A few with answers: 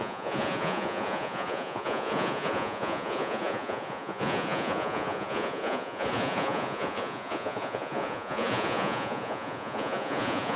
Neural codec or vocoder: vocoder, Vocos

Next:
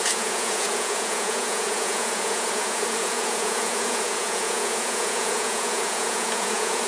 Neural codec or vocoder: vocoder, Vocos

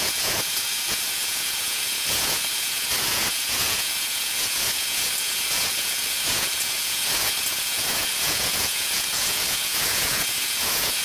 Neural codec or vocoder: vocoder, Vocos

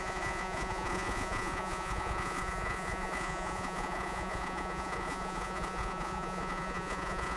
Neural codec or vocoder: vocoder, Vocos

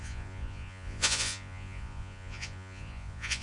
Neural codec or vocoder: vocoder, Vocos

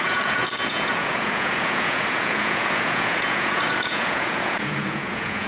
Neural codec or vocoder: vocoder, Vocos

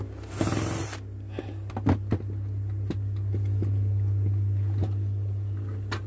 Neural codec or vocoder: none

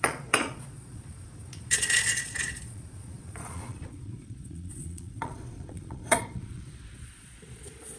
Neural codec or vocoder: vocoder, Vocos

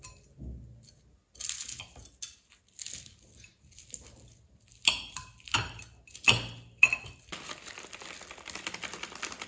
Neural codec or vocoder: none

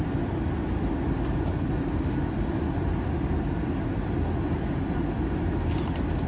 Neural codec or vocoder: none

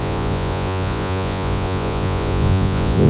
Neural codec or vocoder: vocoder, Vocos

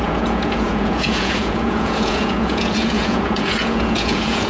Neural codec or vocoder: vocoder, Vocos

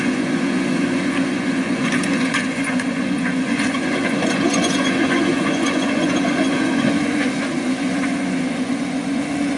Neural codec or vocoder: vocoder, Vocos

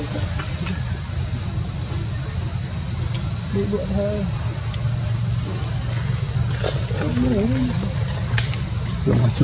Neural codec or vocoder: none